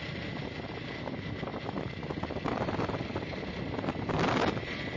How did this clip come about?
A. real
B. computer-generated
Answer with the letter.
A